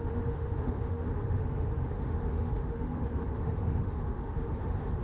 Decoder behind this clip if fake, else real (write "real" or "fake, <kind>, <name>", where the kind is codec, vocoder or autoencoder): fake, autoencoder, DAC-VAE